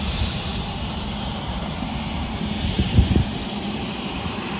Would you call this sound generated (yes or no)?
yes